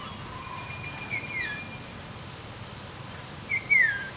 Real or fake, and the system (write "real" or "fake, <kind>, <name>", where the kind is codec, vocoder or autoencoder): real